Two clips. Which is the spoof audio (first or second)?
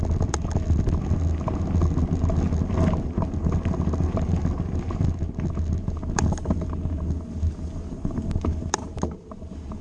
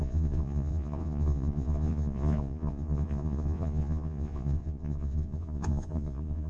second